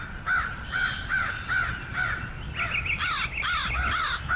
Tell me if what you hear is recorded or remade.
recorded